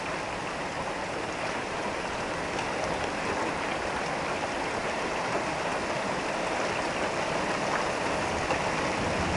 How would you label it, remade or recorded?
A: recorded